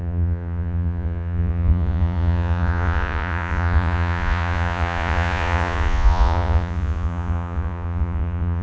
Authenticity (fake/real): fake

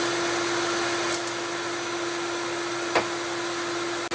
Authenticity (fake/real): real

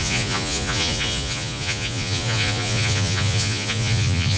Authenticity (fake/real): fake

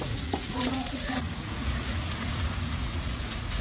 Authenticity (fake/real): fake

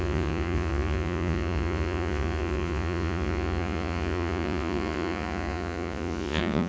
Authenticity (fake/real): fake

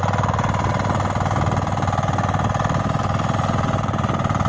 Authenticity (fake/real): real